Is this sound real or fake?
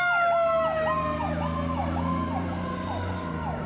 real